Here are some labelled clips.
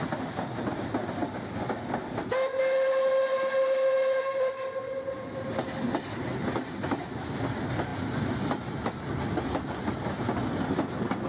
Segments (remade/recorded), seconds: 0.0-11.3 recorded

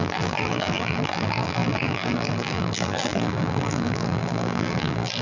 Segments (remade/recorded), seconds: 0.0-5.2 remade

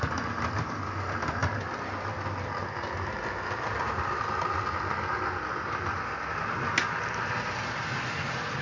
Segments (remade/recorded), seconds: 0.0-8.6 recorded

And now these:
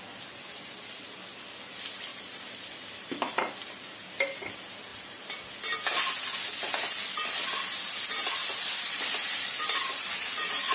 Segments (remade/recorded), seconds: 0.0-2.1 recorded; 2.1-3.1 remade; 3.1-8.4 recorded; 8.4-10.7 remade

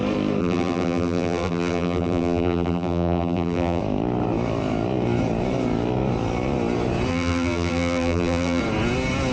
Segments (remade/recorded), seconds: 0.0-0.4 recorded; 0.4-3.8 remade; 3.8-7.1 recorded; 7.1-8.6 remade; 8.6-9.3 recorded